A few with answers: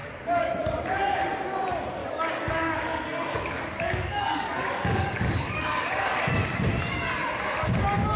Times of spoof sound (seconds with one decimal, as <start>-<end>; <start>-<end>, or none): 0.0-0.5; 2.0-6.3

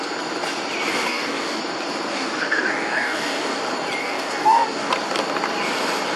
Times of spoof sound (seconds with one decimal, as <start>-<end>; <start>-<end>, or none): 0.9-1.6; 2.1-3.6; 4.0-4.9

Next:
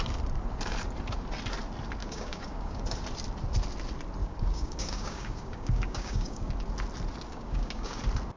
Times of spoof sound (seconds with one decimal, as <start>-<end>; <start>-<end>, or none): 2.0-2.8; 4.2-6.5; 7.3-8.0

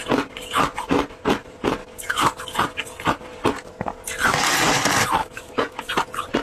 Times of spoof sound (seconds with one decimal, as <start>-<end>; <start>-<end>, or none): 1.8-2.4; 5.2-5.9